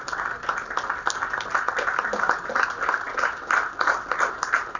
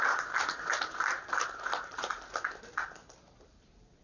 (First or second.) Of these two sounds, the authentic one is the first